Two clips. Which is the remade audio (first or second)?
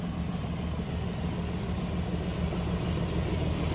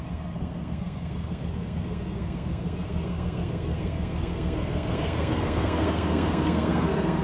second